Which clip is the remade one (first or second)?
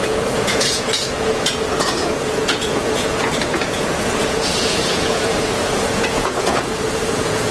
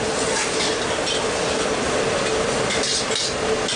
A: first